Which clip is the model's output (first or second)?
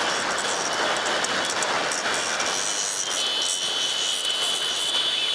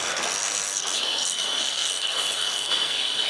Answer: second